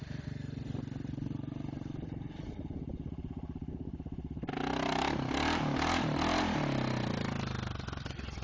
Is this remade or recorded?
recorded